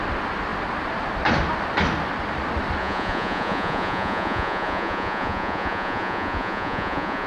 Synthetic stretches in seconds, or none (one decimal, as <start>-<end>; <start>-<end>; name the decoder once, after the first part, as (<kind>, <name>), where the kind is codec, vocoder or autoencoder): 2.8-7.3 (vocoder, Vocos)